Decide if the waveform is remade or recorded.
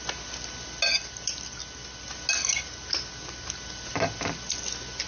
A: recorded